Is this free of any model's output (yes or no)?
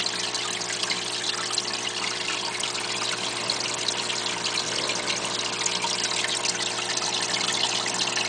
yes